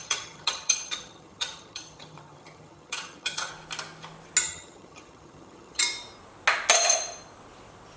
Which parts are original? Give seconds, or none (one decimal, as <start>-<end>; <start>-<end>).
3.5-4.4; 5.8-8.0